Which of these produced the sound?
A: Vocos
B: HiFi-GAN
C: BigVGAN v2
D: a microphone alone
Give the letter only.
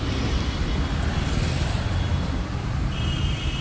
D